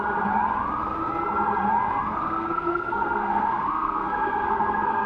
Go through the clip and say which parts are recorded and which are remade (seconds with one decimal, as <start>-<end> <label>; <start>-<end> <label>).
0.0-2.0 recorded; 2.0-5.1 remade